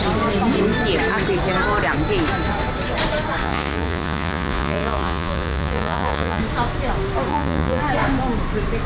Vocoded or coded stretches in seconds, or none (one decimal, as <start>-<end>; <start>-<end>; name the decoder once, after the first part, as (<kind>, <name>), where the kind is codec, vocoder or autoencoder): 3.4-6.4 (vocoder, Vocos); 7.3-7.8